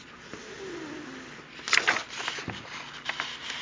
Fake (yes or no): no